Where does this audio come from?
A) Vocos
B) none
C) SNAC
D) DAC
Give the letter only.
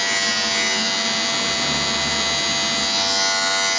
B